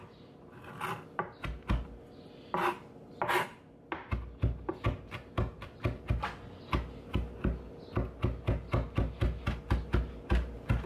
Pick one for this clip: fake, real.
real